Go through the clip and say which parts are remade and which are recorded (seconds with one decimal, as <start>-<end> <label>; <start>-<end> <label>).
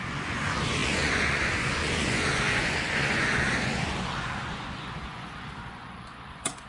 0.0-6.7 remade